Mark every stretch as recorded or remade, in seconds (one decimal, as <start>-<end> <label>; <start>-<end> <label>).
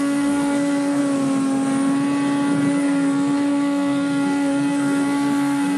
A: 0.0-1.0 remade; 1.0-2.7 recorded; 2.7-5.8 remade